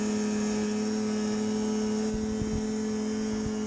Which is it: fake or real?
real